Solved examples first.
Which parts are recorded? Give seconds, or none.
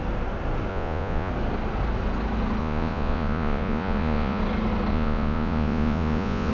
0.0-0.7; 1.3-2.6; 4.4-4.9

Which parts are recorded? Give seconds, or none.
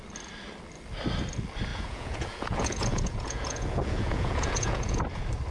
0.0-1.7; 5.0-5.5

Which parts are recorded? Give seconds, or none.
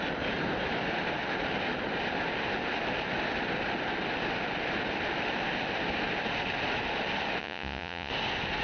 0.0-7.4; 8.1-8.6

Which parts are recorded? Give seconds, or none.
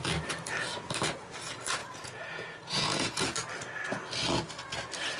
0.0-1.8; 3.2-5.2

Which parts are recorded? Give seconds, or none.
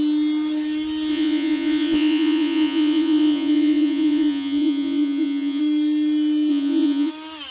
0.0-1.1; 5.6-6.5; 7.1-7.5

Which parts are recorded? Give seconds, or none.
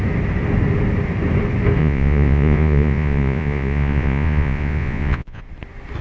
0.0-1.8; 5.4-6.0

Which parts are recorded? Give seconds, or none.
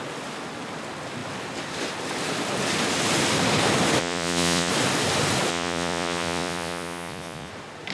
0.0-4.0; 4.7-5.5; 7.5-7.9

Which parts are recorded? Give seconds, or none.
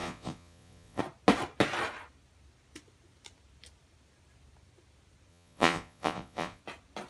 1.0-5.3; 6.6-7.1